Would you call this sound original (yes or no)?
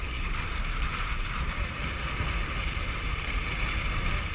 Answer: no